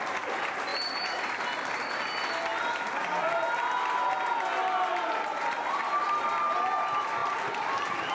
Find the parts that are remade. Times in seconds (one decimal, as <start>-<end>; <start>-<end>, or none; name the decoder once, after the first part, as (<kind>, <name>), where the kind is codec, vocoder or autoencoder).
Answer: none